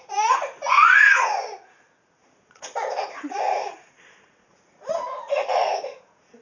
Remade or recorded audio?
remade